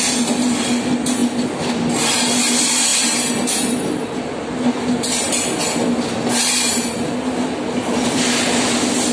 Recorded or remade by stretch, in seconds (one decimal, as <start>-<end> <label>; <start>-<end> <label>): 0.0-9.1 recorded

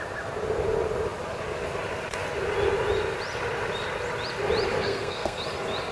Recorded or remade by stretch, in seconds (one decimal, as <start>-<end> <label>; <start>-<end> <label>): 0.0-4.7 recorded; 4.7-5.4 remade; 5.4-5.9 recorded